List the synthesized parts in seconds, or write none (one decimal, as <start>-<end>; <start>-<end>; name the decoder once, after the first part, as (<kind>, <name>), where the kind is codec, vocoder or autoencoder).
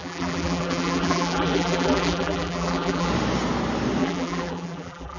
0.0-3.1 (vocoder, BigVGAN v2); 4.0-5.2